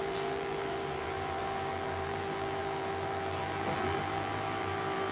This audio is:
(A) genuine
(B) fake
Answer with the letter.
B